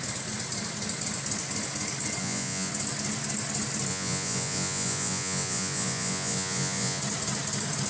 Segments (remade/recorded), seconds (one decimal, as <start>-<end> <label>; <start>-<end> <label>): 0.0-2.2 recorded; 2.2-2.7 remade; 2.7-3.9 recorded; 3.9-7.0 remade; 7.0-7.9 recorded